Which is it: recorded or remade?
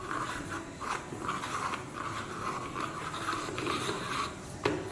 recorded